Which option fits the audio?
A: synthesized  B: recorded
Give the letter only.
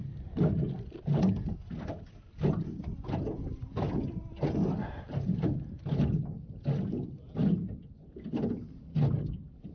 B